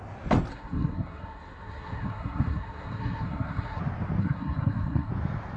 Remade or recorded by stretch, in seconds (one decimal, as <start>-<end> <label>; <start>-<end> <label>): 0.0-0.5 recorded; 0.5-3.8 remade; 3.8-4.2 recorded; 4.2-5.1 remade; 5.1-5.6 recorded